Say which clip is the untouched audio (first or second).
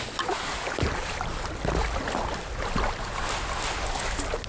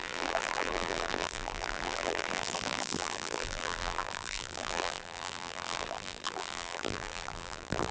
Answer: first